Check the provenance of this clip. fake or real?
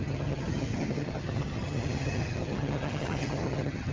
fake